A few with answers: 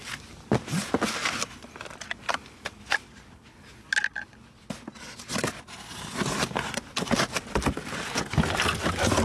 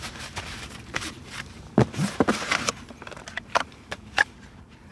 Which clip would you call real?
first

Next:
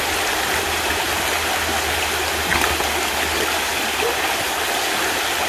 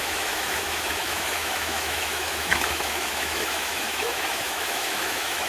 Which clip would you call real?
first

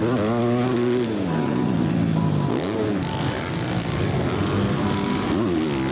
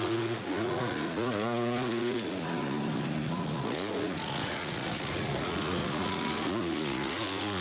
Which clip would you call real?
first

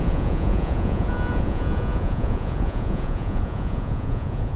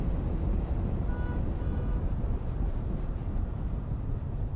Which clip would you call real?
second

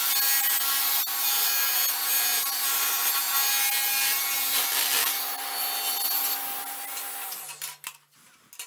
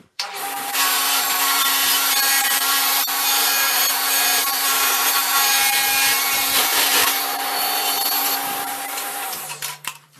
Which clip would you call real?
first